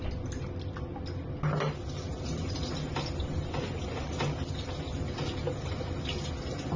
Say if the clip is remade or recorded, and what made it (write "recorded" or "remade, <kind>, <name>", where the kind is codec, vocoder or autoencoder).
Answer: recorded